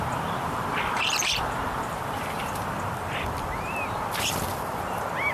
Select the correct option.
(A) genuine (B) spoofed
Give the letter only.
B